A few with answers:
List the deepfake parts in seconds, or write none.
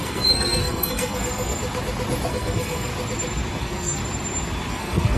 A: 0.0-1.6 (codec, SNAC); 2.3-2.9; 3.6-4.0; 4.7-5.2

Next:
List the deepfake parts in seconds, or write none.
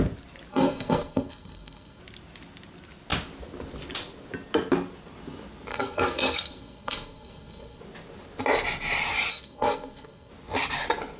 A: 0.5-2.0 (codec, SNAC); 5.7-7.8; 9.3-10.3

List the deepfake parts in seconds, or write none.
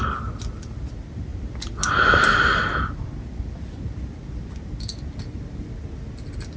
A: none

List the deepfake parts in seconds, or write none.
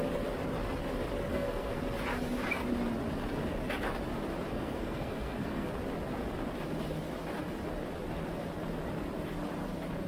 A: 1.3-1.8 (codec, SNAC); 4.5-5.7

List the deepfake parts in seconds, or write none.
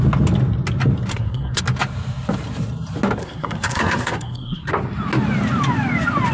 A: 1.1-1.6 (codec, SNAC); 3.2-4.7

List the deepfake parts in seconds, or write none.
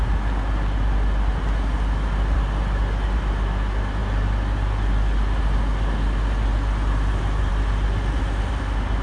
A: none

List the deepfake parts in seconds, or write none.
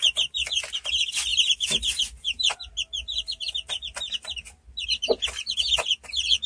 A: none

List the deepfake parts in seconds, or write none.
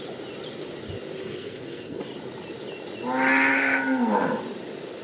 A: 1.2-2.0 (codec, SNAC); 3.5-4.4